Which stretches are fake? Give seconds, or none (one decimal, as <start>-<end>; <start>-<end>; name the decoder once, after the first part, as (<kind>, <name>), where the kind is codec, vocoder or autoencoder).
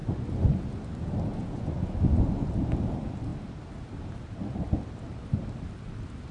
0.0-0.6 (vocoder, Vocos); 1.3-2.5